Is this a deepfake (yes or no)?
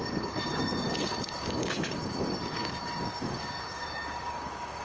yes